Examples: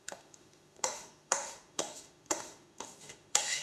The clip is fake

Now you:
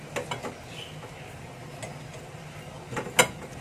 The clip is real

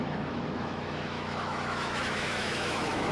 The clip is fake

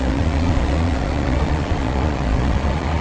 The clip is fake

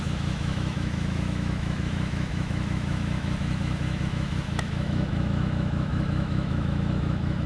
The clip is fake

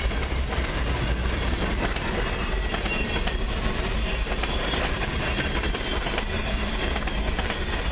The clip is fake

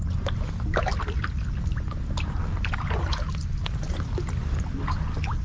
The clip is real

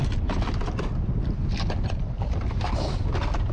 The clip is real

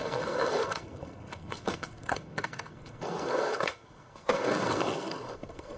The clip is fake